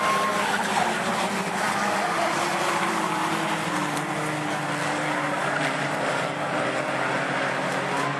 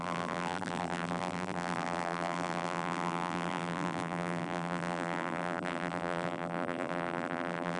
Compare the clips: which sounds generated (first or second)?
second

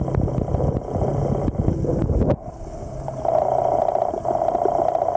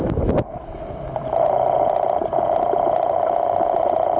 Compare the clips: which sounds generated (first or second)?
second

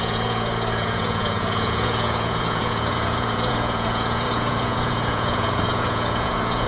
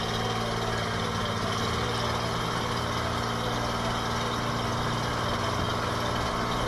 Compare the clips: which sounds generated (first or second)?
first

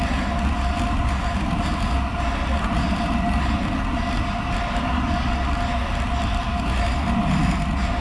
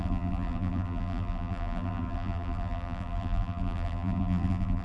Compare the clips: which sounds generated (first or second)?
second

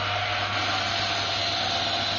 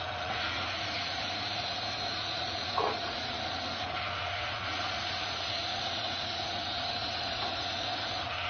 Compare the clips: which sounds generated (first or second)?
second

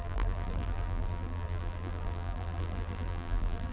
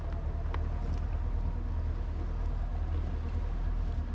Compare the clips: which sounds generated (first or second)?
first